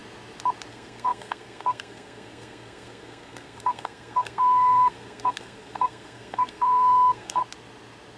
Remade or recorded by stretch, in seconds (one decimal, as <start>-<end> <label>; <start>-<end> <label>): 0.0-0.7 recorded; 0.7-7.4 remade; 7.4-8.2 recorded